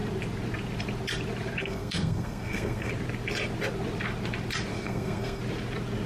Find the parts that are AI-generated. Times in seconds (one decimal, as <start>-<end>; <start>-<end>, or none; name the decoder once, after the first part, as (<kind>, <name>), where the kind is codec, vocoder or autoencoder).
1.6-2.9 (codec, SNAC); 4.7-5.4